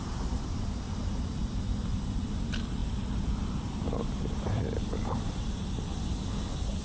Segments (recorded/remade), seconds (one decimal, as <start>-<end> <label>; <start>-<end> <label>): 0.0-2.8 recorded; 2.8-5.3 remade; 5.3-6.8 recorded